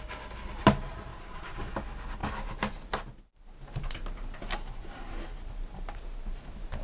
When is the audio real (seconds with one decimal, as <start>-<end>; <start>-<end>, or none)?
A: 0.0-1.1; 1.7-6.8